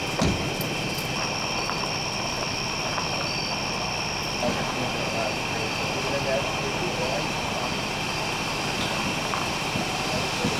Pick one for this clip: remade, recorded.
recorded